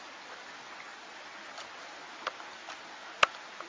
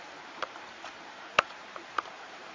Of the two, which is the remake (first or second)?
second